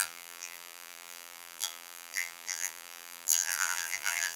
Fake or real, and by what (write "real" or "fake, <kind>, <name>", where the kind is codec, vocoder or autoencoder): fake, vocoder, BigVGAN v2